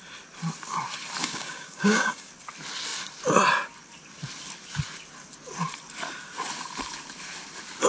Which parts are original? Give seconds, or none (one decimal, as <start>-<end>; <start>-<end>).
0.0-1.2; 2.3-7.9